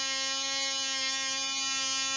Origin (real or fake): real